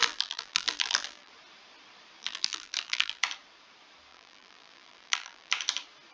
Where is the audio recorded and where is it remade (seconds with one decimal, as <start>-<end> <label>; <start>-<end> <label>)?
0.0-1.3 remade; 1.3-2.2 recorded; 2.2-3.2 remade; 3.2-4.1 recorded; 4.1-5.5 remade; 5.5-6.1 recorded